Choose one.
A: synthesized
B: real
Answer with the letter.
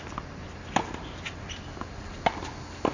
B